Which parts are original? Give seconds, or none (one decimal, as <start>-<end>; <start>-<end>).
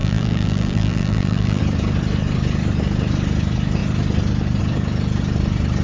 1.6-5.8